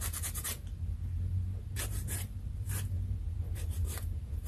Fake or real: fake